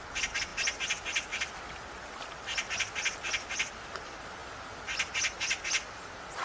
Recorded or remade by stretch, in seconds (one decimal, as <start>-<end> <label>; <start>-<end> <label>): 0.0-6.4 recorded